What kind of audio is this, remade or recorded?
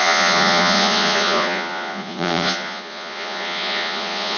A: remade